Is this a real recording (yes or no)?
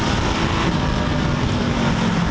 yes